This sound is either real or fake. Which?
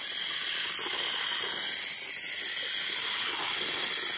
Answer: real